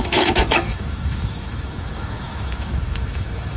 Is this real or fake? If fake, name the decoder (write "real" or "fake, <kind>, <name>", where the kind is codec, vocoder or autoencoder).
fake, autoencoder, DAC-VAE